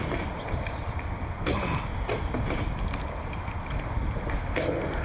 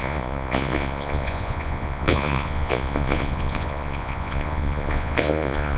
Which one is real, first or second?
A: first